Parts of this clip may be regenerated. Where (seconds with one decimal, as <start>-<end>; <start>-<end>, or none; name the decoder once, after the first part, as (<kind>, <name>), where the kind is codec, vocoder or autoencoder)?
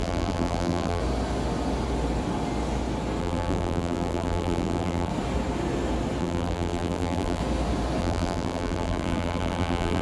0.0-1.0 (vocoder, BigVGAN v2); 3.2-5.1; 6.2-7.4; 8.0-10.0